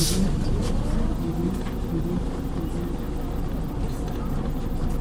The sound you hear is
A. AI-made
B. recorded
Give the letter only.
B